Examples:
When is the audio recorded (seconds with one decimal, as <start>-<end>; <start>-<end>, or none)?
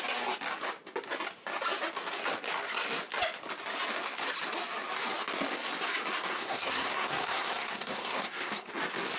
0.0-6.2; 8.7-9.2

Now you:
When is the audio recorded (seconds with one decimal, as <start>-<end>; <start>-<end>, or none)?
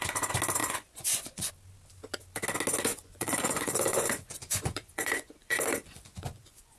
0.0-0.6; 1.5-2.9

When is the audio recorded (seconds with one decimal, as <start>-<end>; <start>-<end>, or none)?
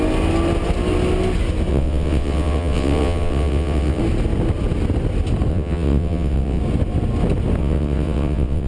0.0-1.7; 4.0-5.5; 6.6-7.6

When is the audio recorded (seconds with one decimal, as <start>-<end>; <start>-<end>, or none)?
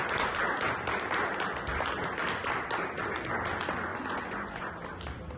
0.0-3.9; 4.7-5.4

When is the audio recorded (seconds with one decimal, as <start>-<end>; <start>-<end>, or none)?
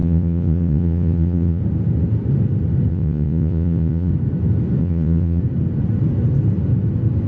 1.6-2.9; 4.1-4.8; 5.4-7.3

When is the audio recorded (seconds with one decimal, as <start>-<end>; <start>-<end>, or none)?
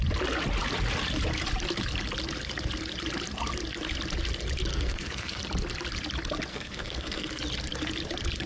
0.0-4.7; 5.4-6.5; 7.4-8.5